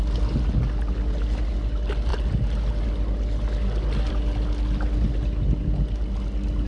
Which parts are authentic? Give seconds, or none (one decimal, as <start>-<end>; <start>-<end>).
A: 0.0-6.7